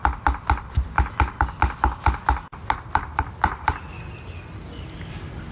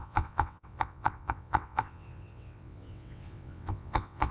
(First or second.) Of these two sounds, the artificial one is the second